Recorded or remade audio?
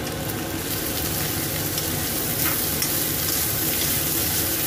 recorded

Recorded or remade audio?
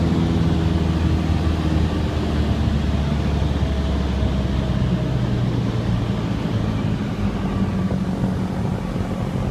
recorded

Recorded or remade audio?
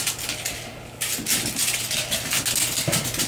recorded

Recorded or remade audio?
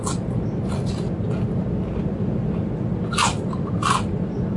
recorded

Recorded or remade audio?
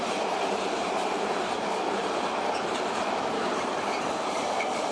remade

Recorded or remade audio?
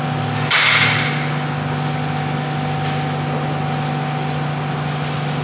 recorded